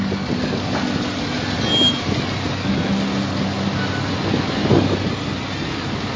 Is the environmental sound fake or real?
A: real